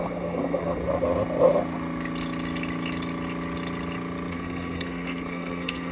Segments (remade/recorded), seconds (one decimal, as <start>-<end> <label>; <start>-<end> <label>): 0.0-0.8 remade; 0.8-4.3 recorded; 4.3-5.9 remade